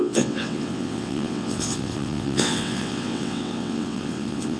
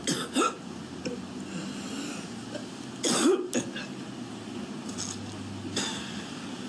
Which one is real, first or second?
second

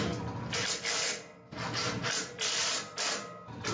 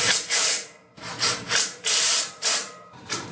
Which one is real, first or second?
first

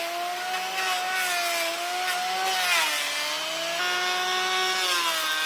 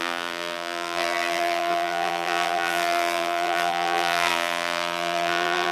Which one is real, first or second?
first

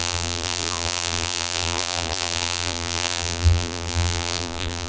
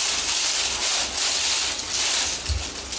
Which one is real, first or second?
second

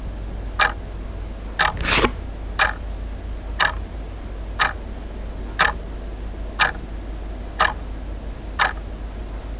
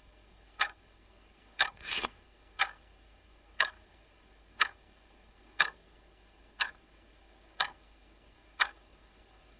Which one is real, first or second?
first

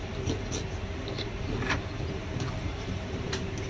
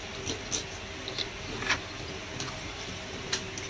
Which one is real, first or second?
second